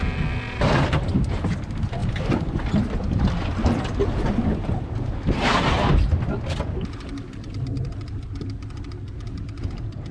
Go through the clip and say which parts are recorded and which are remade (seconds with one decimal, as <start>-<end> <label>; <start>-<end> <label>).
0.0-10.1 recorded